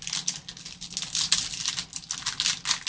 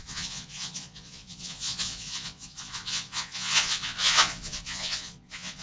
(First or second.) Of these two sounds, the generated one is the second